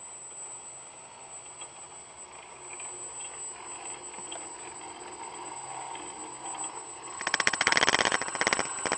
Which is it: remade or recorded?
recorded